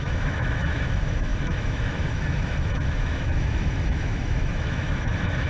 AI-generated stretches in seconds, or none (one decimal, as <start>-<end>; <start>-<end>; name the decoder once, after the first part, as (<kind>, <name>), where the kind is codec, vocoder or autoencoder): 0.0-5.5 (autoencoder, DAC-VAE)